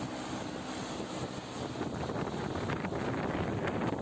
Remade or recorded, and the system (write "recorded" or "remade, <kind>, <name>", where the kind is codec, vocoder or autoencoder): recorded